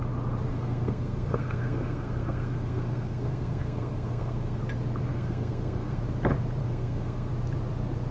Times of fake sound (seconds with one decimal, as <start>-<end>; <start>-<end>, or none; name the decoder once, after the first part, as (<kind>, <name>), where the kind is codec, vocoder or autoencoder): 0.5-4.6 (codec, SNAC); 5.1-6.0; 6.6-7.3